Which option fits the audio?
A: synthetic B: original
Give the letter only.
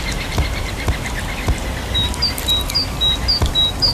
B